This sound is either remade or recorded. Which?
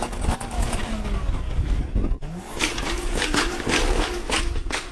remade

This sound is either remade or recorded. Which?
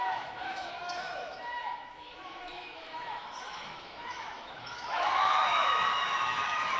remade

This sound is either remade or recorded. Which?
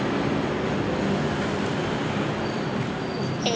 recorded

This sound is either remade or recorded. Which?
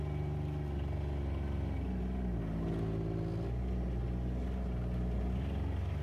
recorded